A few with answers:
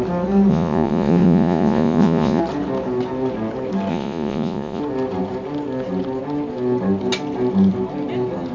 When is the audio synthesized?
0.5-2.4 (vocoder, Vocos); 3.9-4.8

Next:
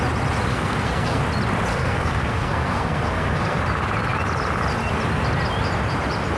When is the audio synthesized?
0.5-1.2 (codec, SNAC); 1.7-3.6

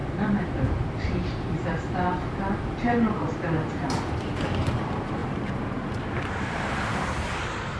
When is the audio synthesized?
0.0-5.2 (vocoder, BigVGAN v2); 6.5-7.8